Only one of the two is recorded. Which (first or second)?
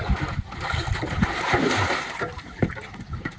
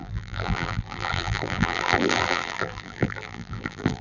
first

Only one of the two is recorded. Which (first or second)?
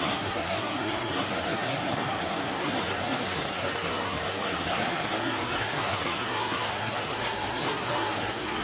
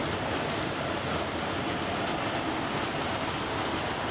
second